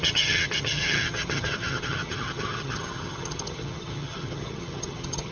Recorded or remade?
remade